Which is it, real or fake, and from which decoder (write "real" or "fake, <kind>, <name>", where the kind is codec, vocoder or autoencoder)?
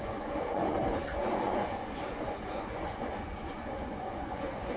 fake, vocoder, Vocos